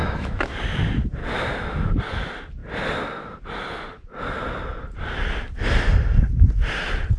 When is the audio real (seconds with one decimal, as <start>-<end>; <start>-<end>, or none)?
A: 0.6-1.2; 2.0-7.2